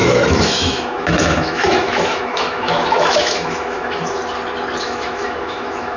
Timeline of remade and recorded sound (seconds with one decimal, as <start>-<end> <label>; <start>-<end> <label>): 0.0-4.2 remade; 4.2-4.8 recorded; 4.8-6.0 remade